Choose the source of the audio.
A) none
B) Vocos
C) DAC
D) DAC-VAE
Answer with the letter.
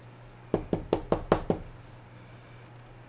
A